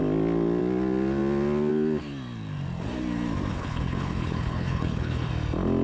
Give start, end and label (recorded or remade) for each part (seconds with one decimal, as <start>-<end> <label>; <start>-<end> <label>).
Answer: 0.0-3.5 recorded; 3.5-5.3 remade; 5.3-5.8 recorded